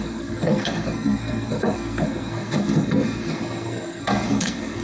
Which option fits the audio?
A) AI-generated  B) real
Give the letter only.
A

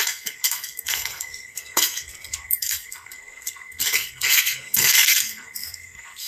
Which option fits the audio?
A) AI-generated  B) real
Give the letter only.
A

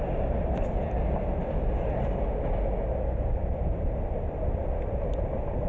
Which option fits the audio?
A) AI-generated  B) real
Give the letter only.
B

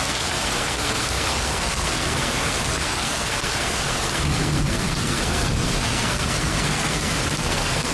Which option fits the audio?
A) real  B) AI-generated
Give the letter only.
B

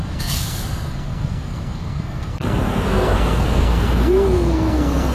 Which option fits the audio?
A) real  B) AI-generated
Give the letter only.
B